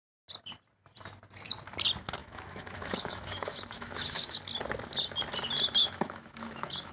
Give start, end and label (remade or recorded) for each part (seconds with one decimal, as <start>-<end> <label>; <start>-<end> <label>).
0.0-2.2 recorded; 2.2-4.4 remade; 4.4-5.8 recorded; 5.8-6.9 remade